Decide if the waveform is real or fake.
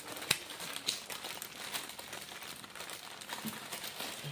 real